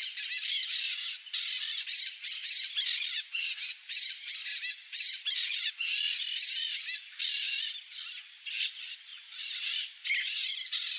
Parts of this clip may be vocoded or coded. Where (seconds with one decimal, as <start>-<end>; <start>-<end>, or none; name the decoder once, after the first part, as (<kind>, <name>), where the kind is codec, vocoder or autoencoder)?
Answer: 4.5-5.7 (vocoder, BigVGAN v2)

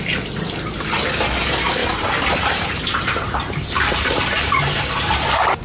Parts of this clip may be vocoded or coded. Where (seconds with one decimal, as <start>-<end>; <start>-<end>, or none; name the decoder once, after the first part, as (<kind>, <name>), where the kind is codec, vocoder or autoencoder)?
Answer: 1.8-5.6 (vocoder, BigVGAN v2)

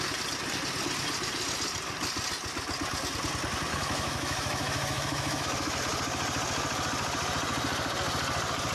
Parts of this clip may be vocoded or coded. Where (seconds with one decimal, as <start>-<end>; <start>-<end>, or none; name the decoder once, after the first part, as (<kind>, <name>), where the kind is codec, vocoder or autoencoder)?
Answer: 3.7-5.8 (autoencoder, DAC-VAE)

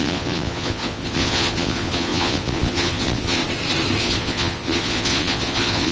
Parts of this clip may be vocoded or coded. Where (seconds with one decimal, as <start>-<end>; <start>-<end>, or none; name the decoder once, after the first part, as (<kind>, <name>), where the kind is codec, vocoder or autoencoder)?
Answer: 0.0-3.4 (vocoder, Vocos); 4.0-5.9

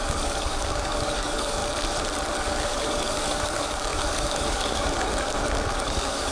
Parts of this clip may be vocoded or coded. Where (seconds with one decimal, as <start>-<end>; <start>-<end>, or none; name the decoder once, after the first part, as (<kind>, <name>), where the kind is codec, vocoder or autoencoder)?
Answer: 0.0-1.6 (codec, DAC); 2.4-6.3